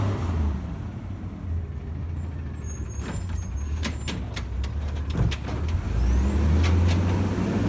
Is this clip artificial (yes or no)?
no